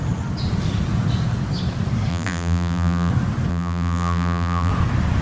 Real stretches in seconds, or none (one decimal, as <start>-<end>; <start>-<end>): 0.0-2.1; 3.1-3.5; 4.7-5.2